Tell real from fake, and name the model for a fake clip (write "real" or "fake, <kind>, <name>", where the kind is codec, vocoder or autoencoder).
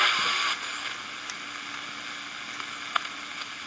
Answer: real